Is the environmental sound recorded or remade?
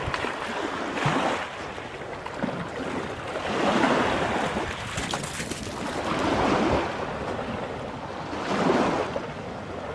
recorded